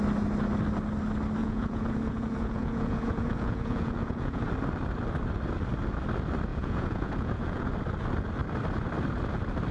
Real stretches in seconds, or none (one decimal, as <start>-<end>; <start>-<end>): 0.0-1.4; 4.4-6.5; 7.7-9.7